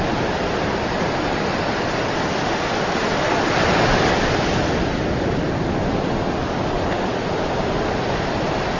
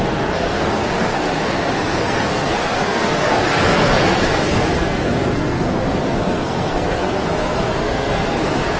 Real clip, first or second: first